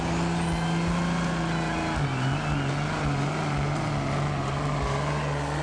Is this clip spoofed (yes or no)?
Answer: no